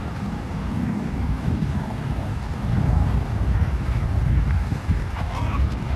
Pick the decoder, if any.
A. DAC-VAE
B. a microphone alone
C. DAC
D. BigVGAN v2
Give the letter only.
C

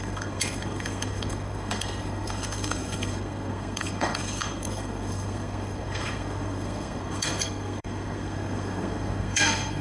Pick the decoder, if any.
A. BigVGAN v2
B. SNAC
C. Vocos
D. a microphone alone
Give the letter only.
B